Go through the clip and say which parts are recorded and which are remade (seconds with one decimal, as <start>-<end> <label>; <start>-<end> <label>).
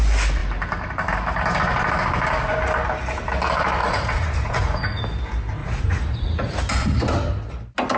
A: 0.0-3.8 recorded; 3.8-5.0 remade; 5.0-5.6 recorded; 5.6-6.6 remade; 6.6-8.0 recorded